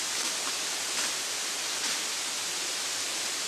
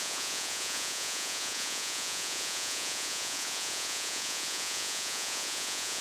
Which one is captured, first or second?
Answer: first